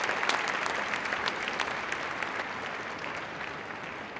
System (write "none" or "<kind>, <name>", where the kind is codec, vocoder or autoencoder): none